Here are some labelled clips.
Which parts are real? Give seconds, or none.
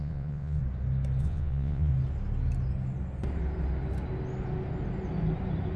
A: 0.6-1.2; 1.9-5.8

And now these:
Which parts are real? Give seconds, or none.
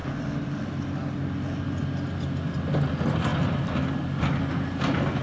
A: 0.7-3.3; 4.4-5.2